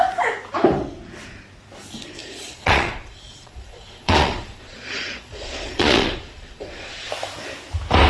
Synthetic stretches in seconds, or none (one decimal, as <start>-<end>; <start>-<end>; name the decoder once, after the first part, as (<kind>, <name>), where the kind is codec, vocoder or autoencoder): 2.2-7.1 (vocoder, Vocos)